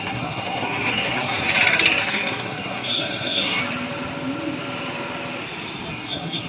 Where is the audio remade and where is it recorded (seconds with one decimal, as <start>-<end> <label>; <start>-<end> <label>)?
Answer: 0.0-1.4 remade; 1.4-2.0 recorded; 2.0-3.6 remade; 3.6-5.9 recorded; 5.9-6.5 remade